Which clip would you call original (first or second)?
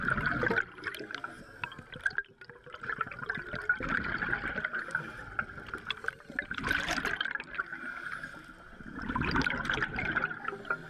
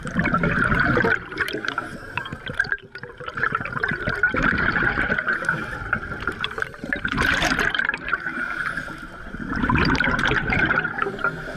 first